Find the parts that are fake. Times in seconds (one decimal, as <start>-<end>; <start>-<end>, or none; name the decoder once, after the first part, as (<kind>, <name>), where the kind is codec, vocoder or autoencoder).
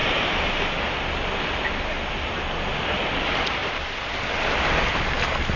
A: none